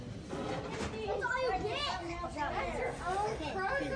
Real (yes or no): yes